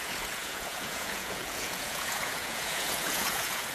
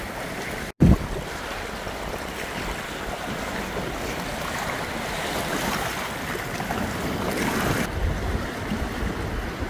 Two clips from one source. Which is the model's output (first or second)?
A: first